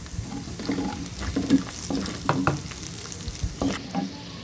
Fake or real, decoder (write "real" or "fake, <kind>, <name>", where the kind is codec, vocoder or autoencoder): real